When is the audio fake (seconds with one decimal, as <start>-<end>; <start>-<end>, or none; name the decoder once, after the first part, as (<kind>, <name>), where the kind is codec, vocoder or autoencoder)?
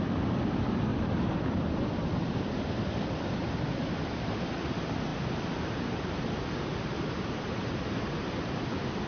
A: 0.0-5.1 (vocoder, BigVGAN v2); 8.6-9.1